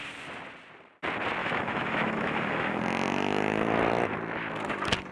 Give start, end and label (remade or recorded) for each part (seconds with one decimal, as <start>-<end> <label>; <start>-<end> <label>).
0.0-1.4 recorded; 1.4-2.8 remade; 2.8-5.1 recorded